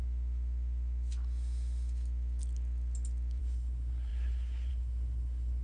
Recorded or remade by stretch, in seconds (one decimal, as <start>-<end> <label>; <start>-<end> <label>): 0.0-3.4 recorded; 3.4-5.6 remade